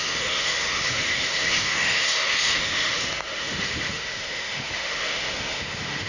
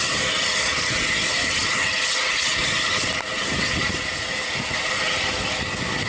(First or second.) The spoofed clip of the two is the first